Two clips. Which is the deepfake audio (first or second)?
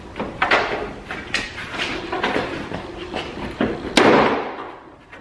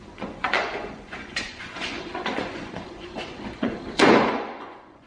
second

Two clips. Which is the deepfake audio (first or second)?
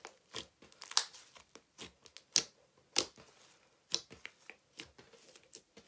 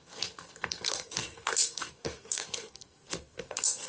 second